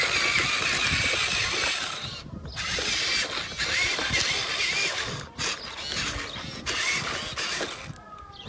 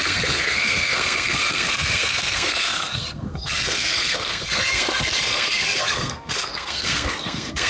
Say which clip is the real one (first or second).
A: first